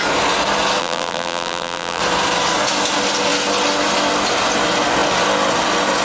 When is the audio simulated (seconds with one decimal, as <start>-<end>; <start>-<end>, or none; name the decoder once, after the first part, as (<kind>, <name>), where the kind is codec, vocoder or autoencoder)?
0.8-2.0 (vocoder, BigVGAN v2)